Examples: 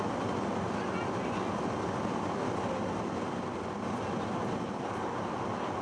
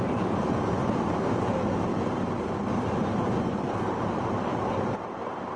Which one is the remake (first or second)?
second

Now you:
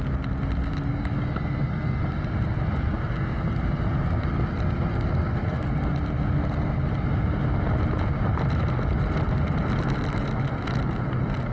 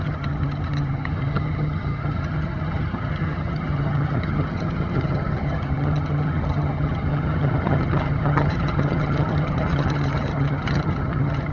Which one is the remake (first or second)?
second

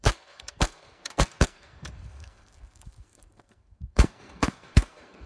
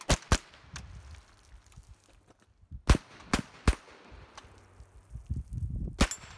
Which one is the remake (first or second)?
first